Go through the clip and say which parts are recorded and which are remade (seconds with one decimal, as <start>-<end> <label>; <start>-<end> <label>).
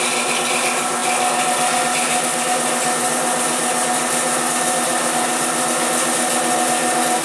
0.0-7.2 recorded